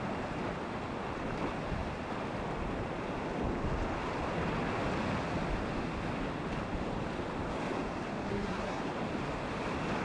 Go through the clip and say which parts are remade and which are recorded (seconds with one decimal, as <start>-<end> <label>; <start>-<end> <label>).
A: 0.0-8.3 recorded; 8.3-8.8 remade; 8.8-10.0 recorded